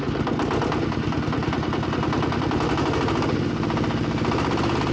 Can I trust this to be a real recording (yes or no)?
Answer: yes